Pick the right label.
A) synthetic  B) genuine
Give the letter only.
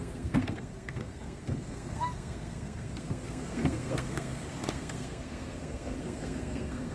A